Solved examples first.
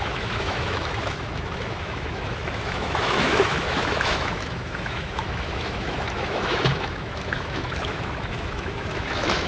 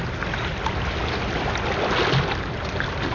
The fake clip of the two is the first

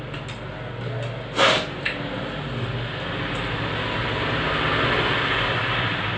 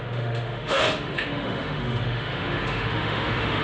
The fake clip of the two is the second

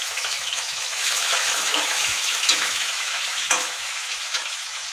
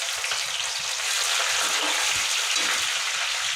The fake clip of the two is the first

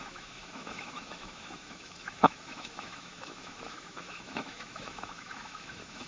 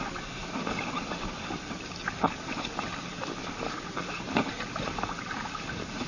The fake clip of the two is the first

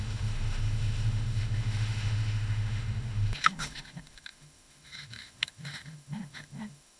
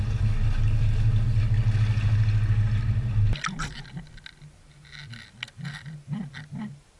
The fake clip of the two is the first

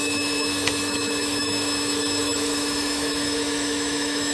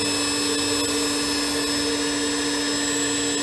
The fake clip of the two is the first